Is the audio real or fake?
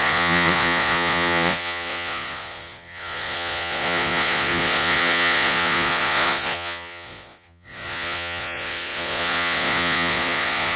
fake